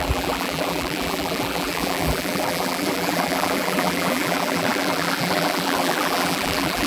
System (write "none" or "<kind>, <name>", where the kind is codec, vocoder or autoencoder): vocoder, BigVGAN v2